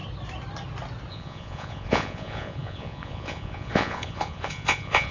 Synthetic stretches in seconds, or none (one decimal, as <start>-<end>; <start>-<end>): 1.1-5.1